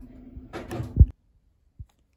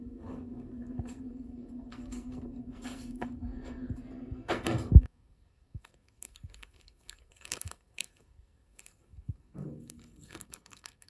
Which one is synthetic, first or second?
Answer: second